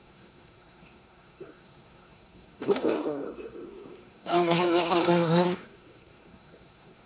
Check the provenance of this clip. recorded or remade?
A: remade